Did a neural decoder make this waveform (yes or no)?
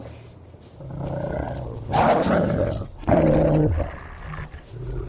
no